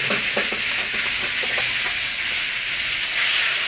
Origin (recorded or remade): recorded